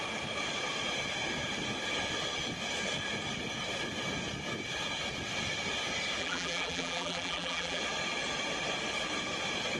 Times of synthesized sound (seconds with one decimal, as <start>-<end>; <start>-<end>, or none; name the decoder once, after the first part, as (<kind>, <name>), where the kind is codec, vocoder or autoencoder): 6.2-7.8 (vocoder, BigVGAN v2)